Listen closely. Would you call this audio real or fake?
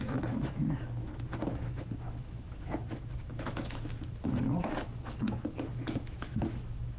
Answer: fake